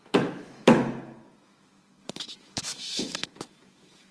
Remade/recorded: remade